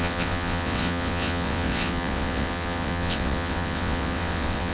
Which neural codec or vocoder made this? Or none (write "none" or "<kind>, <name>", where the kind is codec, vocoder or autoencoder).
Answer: vocoder, WaveNeXt